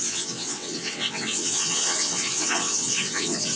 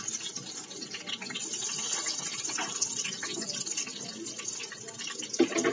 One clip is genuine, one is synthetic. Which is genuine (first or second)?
second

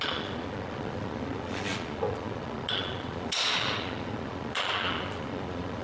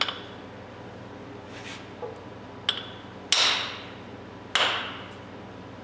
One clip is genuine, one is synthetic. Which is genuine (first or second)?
second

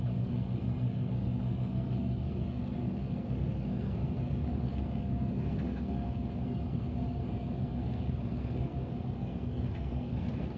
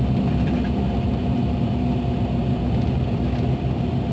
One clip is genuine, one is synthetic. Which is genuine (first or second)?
second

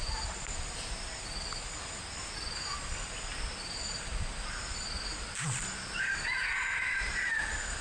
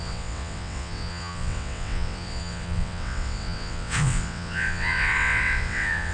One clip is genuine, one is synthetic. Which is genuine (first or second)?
first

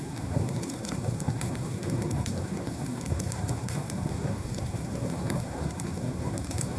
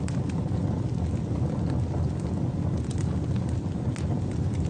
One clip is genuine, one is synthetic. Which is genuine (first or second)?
second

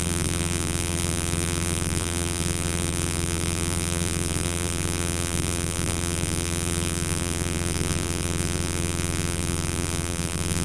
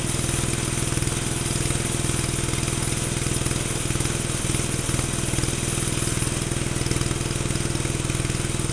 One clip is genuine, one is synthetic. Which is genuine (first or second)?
second